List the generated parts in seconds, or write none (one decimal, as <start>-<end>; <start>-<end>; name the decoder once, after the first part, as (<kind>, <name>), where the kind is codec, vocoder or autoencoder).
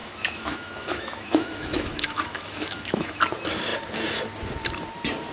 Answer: 0.0-3.2 (autoencoder, DAC-VAE)